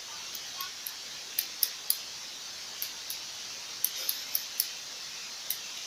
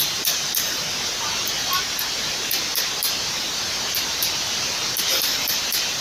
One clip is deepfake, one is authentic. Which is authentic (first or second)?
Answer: first